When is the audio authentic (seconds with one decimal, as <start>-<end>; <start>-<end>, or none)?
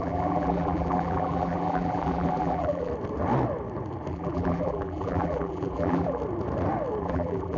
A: 2.9-4.1; 6.2-7.0